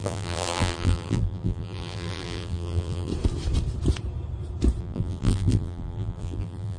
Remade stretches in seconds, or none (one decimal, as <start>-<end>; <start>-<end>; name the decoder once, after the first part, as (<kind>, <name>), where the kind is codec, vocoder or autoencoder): 0.0-3.1 (vocoder, BigVGAN v2); 4.8-6.8